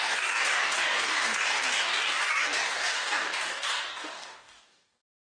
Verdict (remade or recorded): remade